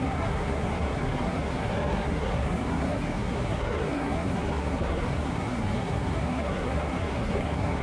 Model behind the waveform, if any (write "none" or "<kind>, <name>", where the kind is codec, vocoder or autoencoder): codec, SNAC